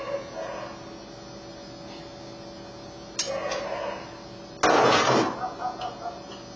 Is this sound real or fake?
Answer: real